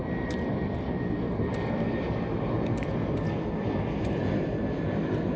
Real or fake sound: fake